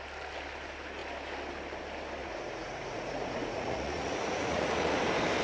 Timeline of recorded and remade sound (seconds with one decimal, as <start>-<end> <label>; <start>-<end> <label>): 0.0-2.2 recorded; 2.2-5.0 remade; 5.0-5.4 recorded